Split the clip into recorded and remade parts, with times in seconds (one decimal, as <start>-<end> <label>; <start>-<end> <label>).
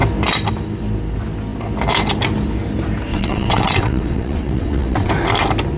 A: 0.0-3.1 recorded; 3.1-5.1 remade; 5.1-5.8 recorded